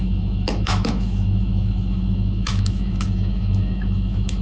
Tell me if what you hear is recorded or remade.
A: remade